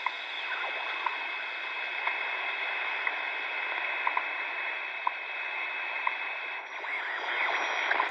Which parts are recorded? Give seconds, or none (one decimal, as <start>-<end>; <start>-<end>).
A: 0.0-1.9; 6.7-8.1

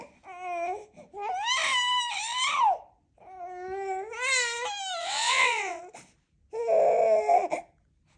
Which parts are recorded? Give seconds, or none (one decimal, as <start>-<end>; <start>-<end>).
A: 0.0-5.0; 5.8-8.2

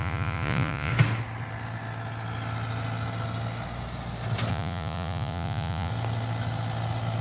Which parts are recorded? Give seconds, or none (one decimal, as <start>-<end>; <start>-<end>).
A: 0.9-4.5; 5.9-7.2

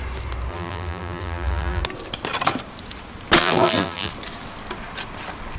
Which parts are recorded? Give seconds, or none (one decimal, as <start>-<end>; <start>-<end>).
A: 0.0-0.5; 1.8-3.4; 4.1-5.6